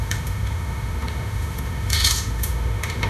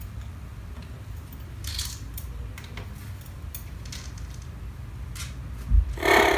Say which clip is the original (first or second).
second